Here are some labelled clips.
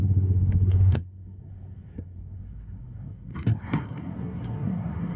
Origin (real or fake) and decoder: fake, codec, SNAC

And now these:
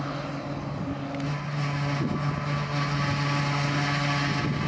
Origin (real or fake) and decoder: real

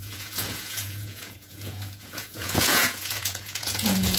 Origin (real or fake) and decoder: fake, vocoder, Vocos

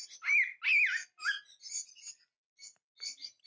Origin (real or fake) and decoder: real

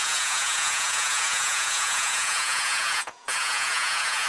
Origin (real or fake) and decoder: fake, vocoder, Vocos